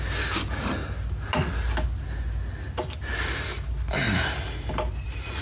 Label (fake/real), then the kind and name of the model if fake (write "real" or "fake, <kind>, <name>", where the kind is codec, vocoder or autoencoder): real